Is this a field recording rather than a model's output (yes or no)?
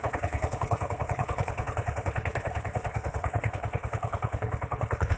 no